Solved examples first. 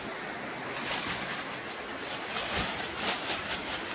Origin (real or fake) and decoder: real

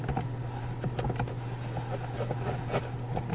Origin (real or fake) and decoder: real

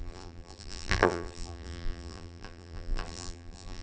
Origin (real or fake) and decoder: fake, vocoder, BigVGAN v2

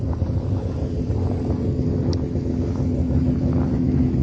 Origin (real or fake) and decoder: real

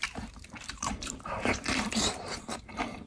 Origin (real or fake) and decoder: fake, vocoder, BigVGAN v2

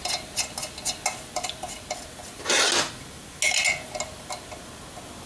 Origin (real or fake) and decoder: real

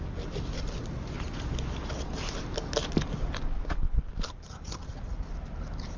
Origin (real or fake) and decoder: real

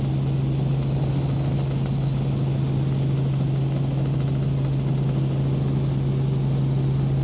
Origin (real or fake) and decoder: real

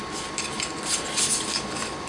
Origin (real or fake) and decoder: real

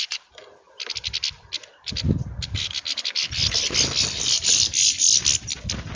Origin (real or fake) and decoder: real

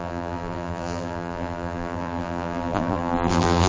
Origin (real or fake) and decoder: fake, vocoder, BigVGAN v2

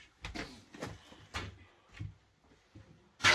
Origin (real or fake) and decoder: real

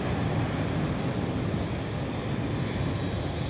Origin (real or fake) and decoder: real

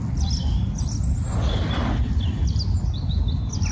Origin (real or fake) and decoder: real